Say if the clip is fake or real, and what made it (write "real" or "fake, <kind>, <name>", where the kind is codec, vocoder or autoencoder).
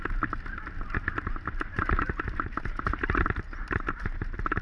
real